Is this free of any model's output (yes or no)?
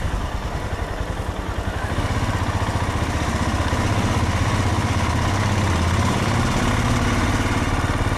yes